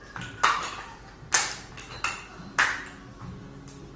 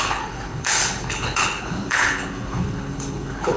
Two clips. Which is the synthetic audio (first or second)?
second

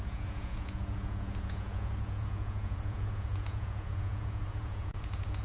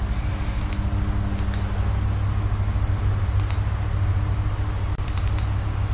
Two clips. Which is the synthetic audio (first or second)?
first